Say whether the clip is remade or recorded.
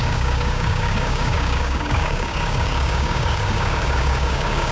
remade